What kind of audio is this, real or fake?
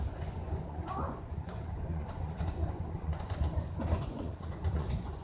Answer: fake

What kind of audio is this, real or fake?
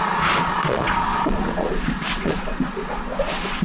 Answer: fake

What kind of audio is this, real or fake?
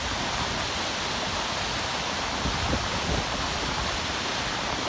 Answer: real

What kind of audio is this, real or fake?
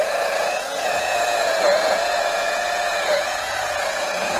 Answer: fake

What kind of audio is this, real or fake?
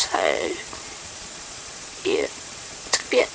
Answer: fake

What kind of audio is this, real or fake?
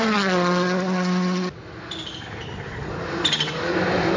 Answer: real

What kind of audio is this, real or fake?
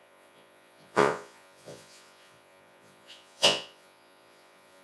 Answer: fake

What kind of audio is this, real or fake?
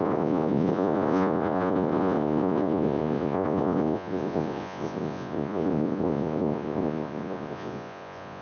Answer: fake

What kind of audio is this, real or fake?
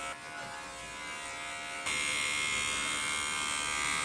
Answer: real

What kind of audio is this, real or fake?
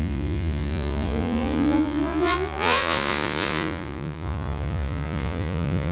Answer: fake